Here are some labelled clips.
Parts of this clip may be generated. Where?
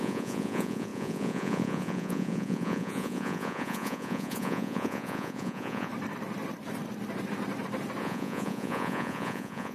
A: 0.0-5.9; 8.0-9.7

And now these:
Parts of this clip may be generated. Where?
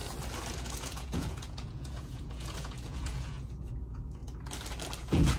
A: 0.5-4.2; 5.0-5.4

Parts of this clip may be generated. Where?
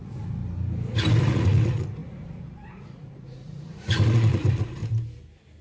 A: 0.0-0.4; 1.2-4.8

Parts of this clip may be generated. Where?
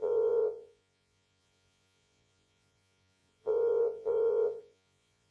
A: 0.0-5.3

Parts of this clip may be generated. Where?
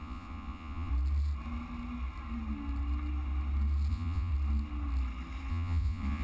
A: 0.0-0.9; 3.9-4.3; 5.5-6.2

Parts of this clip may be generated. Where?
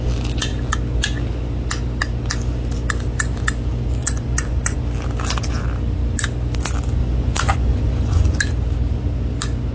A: 4.0-4.8; 7.0-8.4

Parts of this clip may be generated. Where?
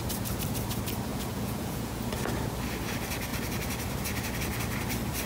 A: 1.1-2.0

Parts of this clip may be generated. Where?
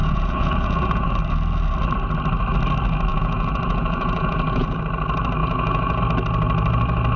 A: 0.0-1.1; 3.1-4.8; 5.4-6.0